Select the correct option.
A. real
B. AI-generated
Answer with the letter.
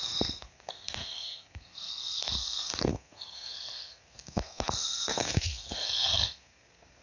B